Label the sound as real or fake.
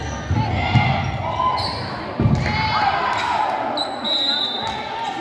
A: real